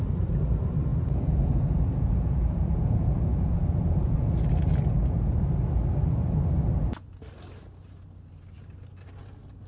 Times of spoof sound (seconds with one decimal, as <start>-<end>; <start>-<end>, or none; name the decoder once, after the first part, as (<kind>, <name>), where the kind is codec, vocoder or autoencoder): 0.9-4.3 (vocoder, Vocos)